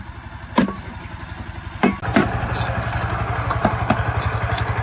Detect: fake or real real